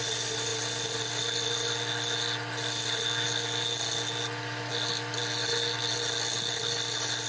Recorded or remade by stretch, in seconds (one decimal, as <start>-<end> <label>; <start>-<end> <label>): 0.0-7.3 recorded

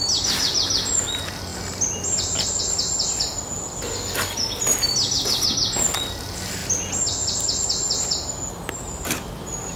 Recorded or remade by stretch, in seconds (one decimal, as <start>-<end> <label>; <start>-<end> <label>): 0.0-9.8 recorded